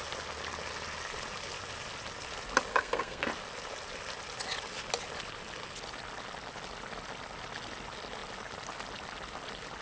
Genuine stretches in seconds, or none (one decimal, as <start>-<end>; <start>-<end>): 0.0-2.7; 3.3-9.8